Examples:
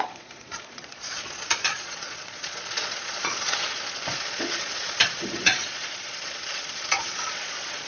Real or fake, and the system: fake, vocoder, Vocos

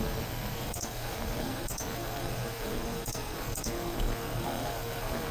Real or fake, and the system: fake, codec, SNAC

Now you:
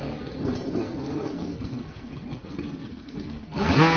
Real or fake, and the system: fake, codec, SNAC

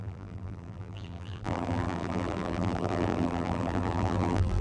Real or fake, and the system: fake, vocoder, BigVGAN v2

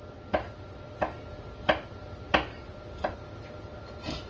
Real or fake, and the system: real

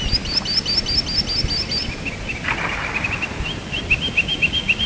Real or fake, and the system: real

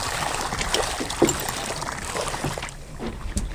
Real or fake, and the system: fake, vocoder, BigVGAN v2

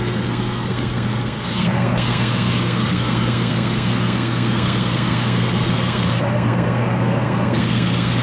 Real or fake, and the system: fake, codec, SNAC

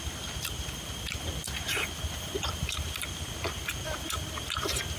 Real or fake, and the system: real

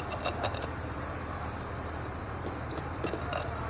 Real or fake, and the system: fake, vocoder, BigVGAN v2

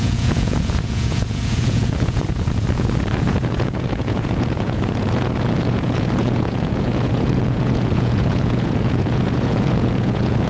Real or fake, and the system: fake, vocoder, Vocos